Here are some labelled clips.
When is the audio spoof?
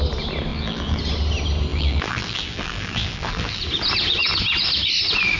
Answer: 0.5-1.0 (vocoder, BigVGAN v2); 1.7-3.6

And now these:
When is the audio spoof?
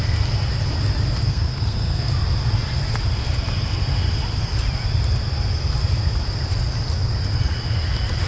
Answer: 1.3-2.1 (codec, SNAC)